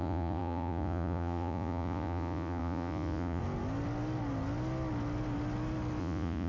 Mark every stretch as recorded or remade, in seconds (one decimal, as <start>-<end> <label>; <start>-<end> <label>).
0.0-3.4 remade; 3.4-6.0 recorded; 6.0-6.5 remade